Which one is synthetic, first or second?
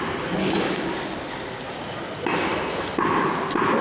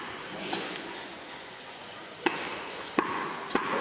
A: second